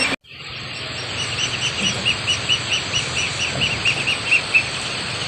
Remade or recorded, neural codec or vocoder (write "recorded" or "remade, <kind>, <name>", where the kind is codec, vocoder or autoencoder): recorded